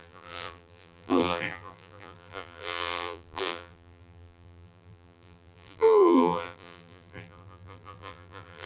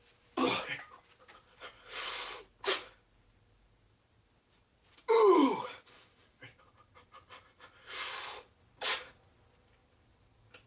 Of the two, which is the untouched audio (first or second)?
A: second